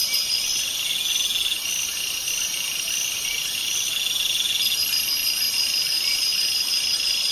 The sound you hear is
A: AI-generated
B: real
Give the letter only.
B